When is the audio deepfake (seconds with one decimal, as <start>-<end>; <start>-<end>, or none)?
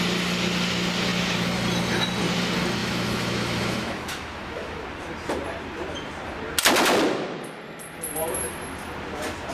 2.8-4.8